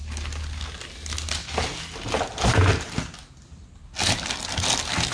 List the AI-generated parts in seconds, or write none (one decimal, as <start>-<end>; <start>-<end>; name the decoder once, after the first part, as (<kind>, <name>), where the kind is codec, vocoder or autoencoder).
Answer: none